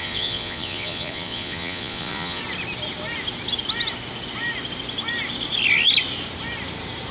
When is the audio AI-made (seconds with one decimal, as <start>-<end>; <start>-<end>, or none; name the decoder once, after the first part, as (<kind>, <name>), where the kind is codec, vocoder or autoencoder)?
0.0-2.4 (vocoder, Vocos)